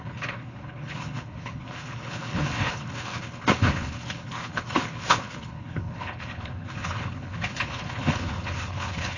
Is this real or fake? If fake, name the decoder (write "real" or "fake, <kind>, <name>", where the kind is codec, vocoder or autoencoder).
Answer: fake, codec, HILCodec